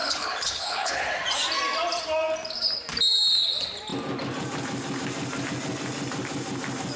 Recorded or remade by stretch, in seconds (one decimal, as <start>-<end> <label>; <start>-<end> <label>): 0.0-1.1 remade; 1.1-7.0 recorded